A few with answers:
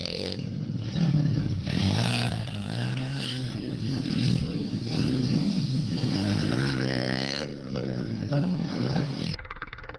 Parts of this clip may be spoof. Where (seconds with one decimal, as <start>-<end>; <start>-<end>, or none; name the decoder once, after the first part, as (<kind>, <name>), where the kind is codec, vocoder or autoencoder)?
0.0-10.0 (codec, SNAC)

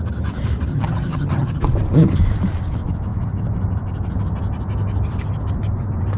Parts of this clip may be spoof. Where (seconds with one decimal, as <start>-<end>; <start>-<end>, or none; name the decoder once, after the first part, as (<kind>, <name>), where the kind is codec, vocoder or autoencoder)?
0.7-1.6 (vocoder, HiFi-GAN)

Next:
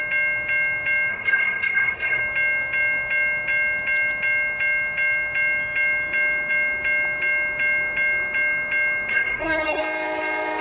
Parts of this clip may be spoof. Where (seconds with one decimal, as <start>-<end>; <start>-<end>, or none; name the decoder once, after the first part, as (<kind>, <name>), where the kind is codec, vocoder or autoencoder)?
1.1-2.2 (codec, SNAC); 9.1-9.8

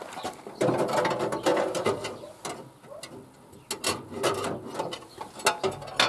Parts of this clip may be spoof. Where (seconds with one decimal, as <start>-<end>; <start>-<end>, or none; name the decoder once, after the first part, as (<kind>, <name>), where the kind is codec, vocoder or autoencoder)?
none

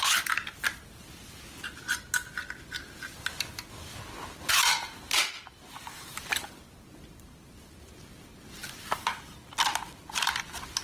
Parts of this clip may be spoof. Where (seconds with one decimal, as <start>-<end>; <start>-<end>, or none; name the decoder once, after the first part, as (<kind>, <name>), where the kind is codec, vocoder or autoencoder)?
none